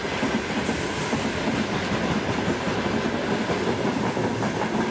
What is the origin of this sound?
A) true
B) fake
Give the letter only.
A